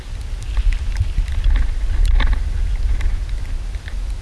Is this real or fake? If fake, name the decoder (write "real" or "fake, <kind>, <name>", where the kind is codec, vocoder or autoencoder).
real